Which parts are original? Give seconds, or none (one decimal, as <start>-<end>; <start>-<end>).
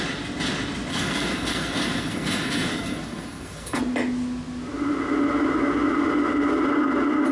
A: 0.0-0.9; 3.8-7.3